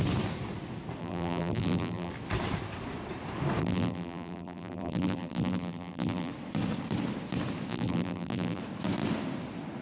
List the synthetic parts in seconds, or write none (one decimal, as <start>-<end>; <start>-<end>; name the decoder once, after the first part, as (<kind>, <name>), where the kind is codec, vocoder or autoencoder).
1.0-2.1 (vocoder, BigVGAN v2); 3.6-6.3; 7.7-8.6